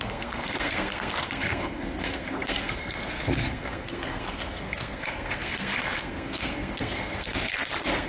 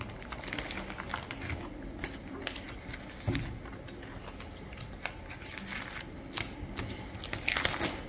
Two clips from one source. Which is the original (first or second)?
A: second